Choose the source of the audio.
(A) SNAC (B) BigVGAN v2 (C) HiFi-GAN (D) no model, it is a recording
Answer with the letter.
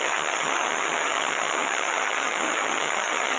C